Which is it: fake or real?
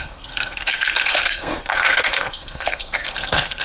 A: fake